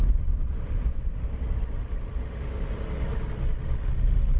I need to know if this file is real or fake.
real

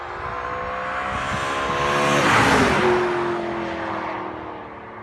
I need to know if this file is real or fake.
real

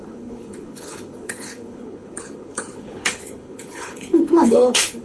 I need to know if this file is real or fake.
fake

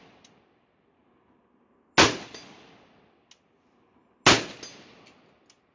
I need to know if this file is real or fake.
real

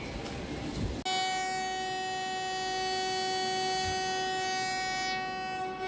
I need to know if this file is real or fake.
real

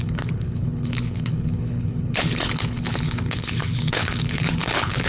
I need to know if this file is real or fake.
fake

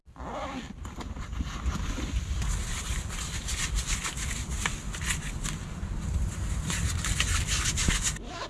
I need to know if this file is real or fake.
real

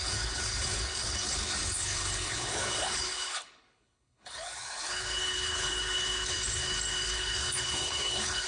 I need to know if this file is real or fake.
fake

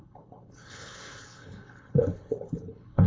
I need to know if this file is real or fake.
fake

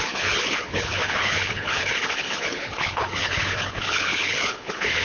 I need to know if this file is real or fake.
fake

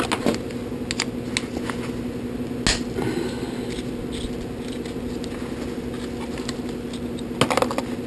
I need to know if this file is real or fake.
real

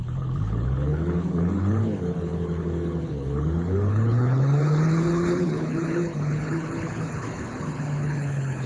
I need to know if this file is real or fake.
fake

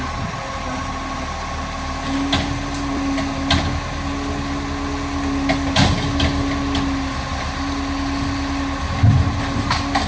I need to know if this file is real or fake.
real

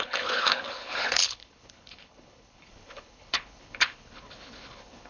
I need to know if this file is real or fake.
fake